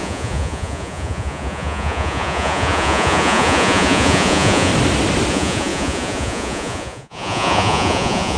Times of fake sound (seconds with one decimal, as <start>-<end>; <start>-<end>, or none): 0.0-4.7; 5.3-8.4